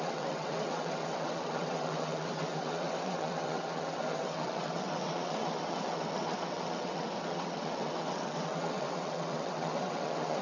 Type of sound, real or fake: fake